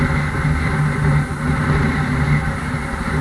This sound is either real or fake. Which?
real